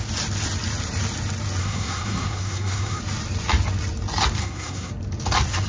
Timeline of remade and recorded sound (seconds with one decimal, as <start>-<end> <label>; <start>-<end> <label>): 0.0-1.6 recorded; 1.6-3.0 remade; 3.0-4.4 recorded; 4.4-4.9 remade; 4.9-5.7 recorded